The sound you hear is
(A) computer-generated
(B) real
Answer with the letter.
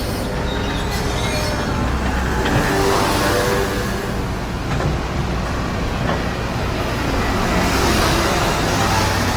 B